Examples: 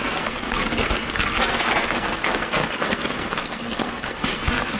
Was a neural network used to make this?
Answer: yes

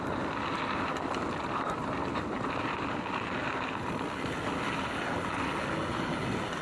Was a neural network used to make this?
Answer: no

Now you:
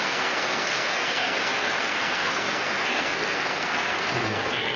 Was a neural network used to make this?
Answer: yes